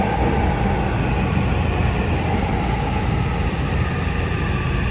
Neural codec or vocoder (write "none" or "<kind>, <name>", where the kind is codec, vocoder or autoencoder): none